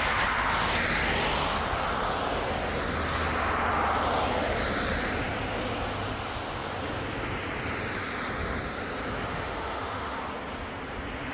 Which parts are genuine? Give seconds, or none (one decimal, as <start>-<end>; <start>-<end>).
0.0-9.3; 10.2-11.3